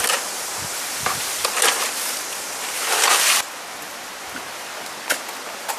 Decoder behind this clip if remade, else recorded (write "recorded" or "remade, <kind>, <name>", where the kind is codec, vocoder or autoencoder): remade, vocoder, BigVGAN v2